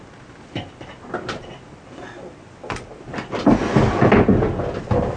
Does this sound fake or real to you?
real